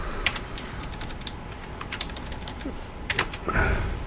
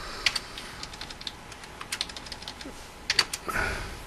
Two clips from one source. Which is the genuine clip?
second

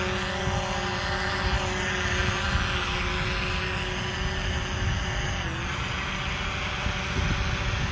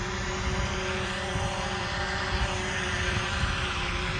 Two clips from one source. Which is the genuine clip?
first